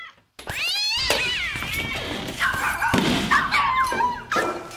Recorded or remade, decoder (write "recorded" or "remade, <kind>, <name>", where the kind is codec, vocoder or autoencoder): recorded